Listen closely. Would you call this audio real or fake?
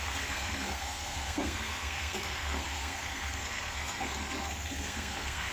fake